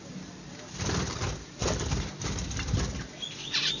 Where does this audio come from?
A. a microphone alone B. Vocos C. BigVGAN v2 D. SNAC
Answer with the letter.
A